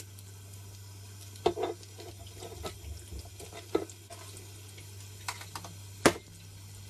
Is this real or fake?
real